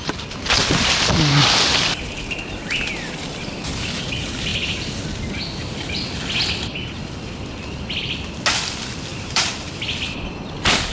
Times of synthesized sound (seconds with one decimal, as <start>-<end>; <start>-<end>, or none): 9.1-9.8